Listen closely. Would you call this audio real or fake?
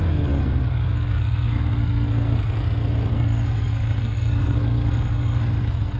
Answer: fake